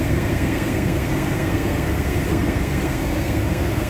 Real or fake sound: fake